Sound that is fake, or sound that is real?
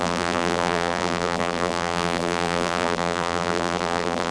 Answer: fake